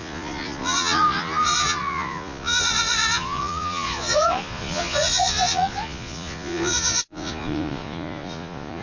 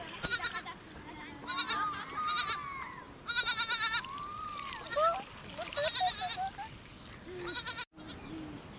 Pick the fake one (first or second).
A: first